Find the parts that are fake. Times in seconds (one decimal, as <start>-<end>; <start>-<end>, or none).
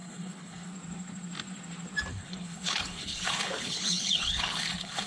0.0-0.7; 2.1-5.1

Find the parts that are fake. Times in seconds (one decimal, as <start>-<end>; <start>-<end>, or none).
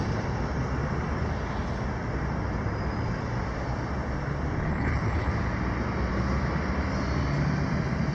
4.7-5.3